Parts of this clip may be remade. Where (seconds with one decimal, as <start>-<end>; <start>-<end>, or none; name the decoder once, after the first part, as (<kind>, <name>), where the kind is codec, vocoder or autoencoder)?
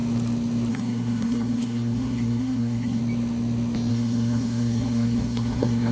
0.7-3.0 (codec, SNAC); 3.9-5.9